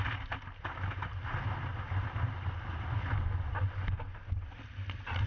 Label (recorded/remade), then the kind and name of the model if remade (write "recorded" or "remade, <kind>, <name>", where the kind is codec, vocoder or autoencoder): recorded